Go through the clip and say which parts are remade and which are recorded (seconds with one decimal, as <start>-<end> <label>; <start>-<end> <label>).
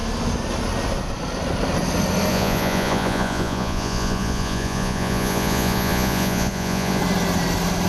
0.0-2.3 recorded; 2.3-7.0 remade; 7.0-7.9 recorded